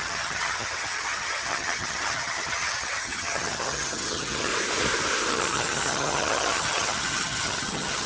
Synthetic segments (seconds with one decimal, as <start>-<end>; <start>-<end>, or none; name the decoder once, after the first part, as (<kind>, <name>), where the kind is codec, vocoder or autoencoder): 0.0-4.5 (vocoder, HiFi-GAN); 5.3-8.1